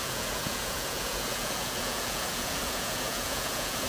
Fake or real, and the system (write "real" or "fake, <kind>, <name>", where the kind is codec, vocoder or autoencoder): fake, vocoder, Vocos